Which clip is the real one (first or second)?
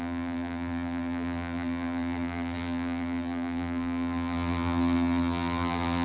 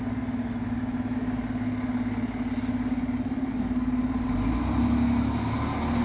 second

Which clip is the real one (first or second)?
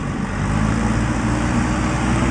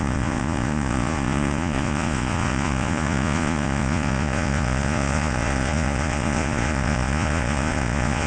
first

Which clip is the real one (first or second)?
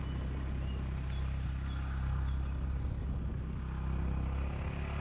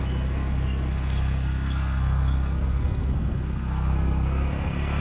first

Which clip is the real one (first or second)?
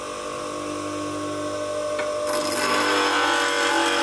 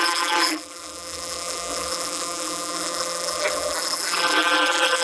first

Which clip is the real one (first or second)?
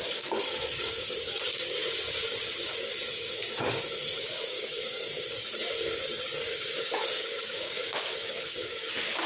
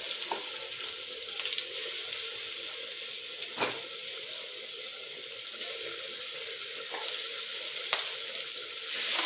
second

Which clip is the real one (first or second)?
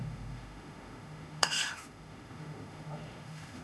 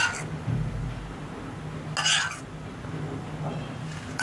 second